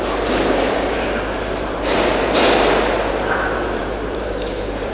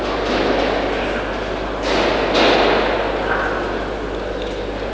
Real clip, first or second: second